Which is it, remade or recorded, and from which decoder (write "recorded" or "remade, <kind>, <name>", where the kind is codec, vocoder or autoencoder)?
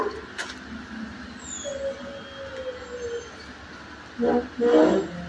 recorded